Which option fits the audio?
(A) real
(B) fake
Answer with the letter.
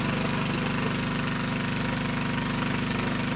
A